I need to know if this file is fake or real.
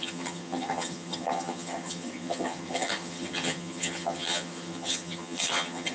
fake